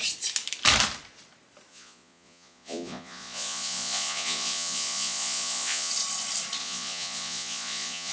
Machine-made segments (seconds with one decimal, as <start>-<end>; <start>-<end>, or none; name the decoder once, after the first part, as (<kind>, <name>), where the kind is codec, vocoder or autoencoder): 1.7-5.9 (vocoder, Vocos); 6.6-8.1